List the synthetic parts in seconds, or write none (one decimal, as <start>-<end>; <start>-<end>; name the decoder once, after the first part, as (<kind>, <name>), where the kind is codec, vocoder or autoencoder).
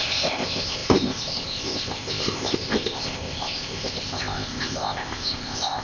0.0-5.8 (codec, ZipCodec)